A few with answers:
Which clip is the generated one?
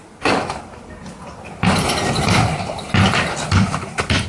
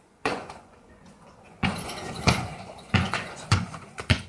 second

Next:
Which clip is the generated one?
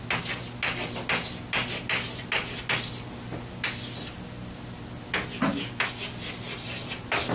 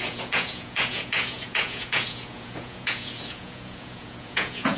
second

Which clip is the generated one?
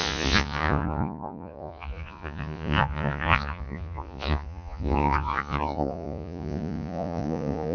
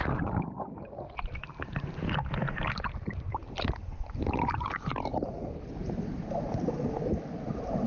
first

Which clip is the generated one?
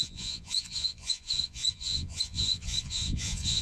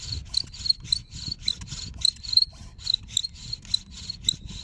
first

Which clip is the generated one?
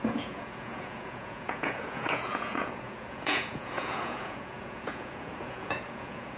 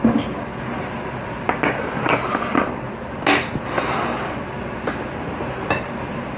first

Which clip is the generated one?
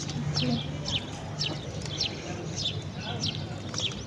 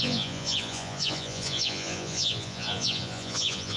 second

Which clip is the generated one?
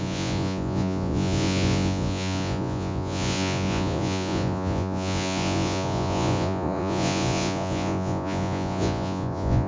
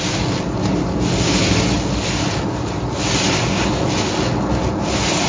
first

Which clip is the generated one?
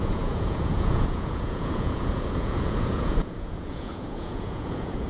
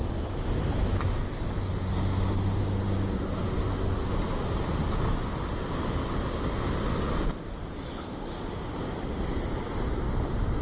first